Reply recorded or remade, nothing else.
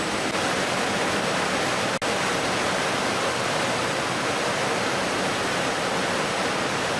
recorded